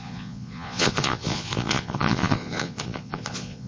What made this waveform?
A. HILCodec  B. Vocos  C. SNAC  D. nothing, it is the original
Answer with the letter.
B